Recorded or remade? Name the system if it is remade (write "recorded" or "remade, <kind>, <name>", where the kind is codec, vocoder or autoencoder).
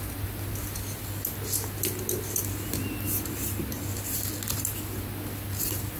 recorded